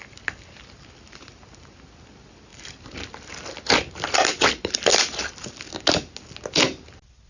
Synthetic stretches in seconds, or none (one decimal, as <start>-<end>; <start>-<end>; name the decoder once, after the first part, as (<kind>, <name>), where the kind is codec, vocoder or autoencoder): none